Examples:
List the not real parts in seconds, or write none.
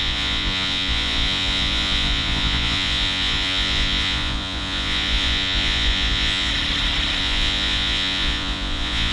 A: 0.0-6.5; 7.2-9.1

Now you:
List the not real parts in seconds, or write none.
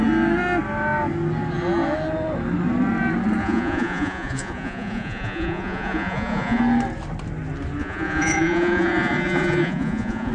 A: 3.4-6.6; 7.8-10.3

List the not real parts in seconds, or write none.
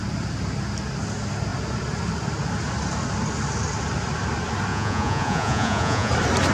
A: 4.7-6.1